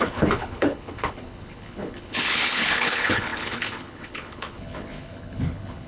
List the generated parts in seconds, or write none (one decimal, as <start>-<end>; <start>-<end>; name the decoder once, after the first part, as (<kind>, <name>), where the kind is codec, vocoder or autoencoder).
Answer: 0.0-5.9 (codec, HILCodec)